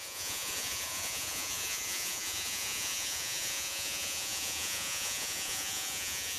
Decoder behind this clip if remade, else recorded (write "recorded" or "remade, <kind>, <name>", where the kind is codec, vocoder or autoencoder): remade, vocoder, Vocos